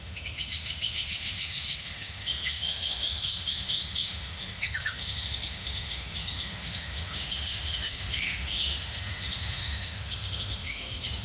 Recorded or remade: remade